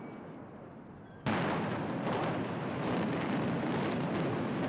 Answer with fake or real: real